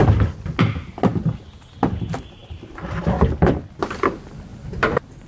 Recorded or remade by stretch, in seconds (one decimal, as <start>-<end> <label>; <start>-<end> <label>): 0.0-4.5 recorded; 4.5-5.3 remade